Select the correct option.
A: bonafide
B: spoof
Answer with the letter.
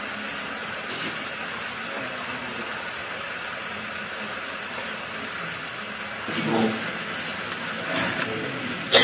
A